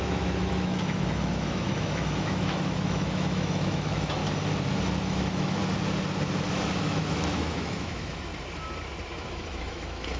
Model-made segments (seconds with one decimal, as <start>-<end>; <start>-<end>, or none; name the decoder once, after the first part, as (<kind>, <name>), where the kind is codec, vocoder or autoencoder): 0.0-4.2 (autoencoder, DAC-VAE); 5.0-5.6; 6.8-8.3; 9.1-10.2